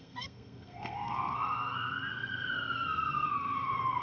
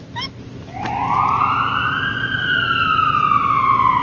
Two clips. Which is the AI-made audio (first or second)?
first